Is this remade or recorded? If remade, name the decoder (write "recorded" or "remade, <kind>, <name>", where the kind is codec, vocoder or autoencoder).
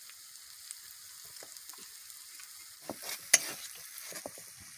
recorded